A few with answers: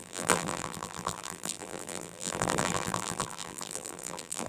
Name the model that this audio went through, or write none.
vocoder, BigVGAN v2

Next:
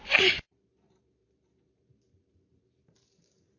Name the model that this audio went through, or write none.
vocoder, BigVGAN v2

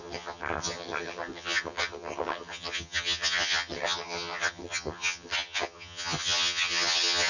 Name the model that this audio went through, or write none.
vocoder, HiFi-GAN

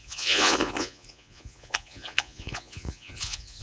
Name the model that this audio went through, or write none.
vocoder, Vocos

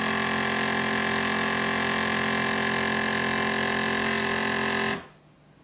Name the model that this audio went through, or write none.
none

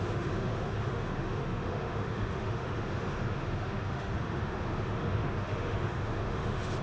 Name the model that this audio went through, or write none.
autoencoder, DAC-VAE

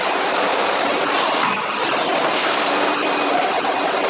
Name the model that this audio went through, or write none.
none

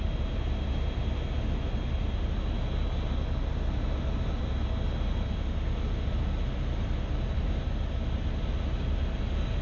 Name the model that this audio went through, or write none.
none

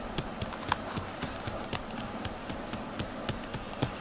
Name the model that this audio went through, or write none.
none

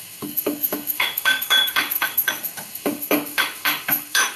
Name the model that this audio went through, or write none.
autoencoder, DAC-VAE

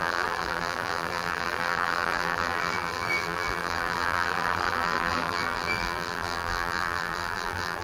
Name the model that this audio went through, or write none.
vocoder, BigVGAN v2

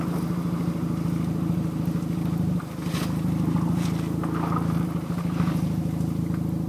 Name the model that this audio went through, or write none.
none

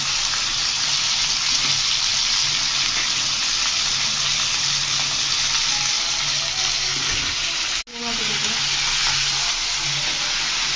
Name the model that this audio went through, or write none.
none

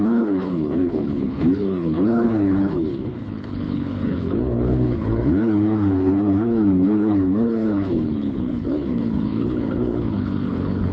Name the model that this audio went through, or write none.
codec, HILCodec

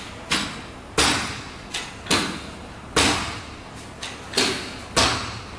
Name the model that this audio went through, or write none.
none